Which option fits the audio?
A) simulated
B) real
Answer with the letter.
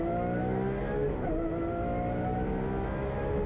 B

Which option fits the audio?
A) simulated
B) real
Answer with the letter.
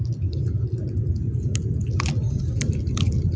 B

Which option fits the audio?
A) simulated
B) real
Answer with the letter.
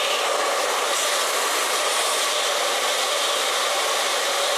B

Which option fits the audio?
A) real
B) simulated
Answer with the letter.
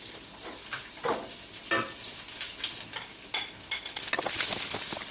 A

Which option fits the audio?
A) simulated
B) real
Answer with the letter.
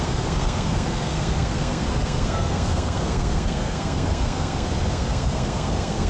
A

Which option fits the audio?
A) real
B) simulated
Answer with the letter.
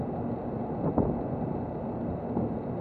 A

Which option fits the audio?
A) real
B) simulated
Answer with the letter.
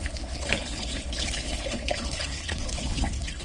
B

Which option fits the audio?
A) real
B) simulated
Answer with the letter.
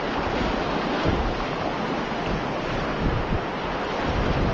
A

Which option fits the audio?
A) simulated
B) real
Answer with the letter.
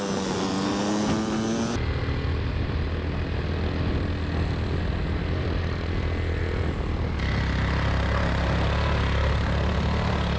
B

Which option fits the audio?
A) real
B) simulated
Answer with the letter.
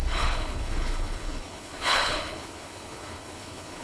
B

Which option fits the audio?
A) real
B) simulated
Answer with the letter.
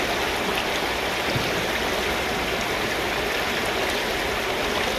A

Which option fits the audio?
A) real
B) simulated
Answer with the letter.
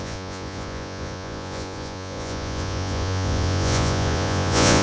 B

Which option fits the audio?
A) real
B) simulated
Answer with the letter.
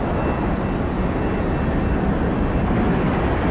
A